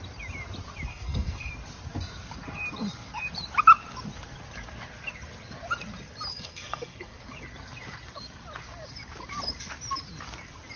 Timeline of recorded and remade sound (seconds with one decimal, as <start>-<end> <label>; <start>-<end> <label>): 0.0-0.9 recorded; 0.9-1.5 remade; 1.5-6.3 recorded; 6.3-7.2 remade; 7.2-10.8 recorded